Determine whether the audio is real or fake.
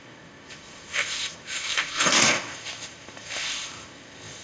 fake